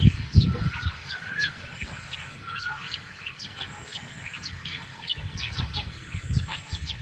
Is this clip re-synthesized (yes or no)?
yes